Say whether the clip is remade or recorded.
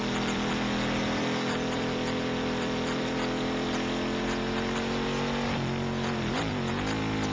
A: remade